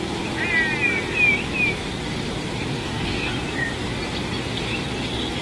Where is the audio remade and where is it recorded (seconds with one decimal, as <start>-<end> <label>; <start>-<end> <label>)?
0.0-2.7 recorded; 2.7-3.3 remade; 3.3-5.4 recorded